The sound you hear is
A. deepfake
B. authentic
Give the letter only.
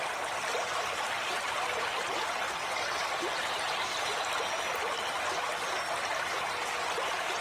B